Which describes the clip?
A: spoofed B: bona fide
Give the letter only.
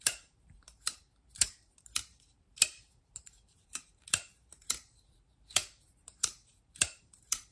A